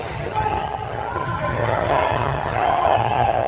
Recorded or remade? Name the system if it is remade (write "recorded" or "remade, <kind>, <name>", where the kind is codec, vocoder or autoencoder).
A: remade, vocoder, HiFi-GAN